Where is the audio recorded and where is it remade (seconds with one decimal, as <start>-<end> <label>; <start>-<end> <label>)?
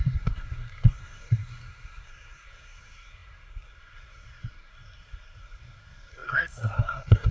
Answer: 0.0-7.3 remade